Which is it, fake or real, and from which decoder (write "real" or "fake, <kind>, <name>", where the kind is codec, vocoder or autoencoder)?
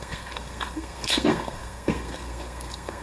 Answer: fake, codec, SNAC